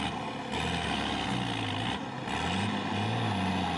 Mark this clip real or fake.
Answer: real